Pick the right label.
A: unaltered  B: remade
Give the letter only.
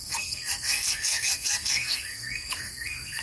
B